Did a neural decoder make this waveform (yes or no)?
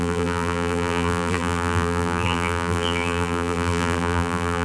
yes